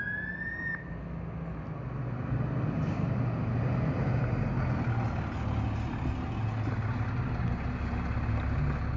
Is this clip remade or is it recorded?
recorded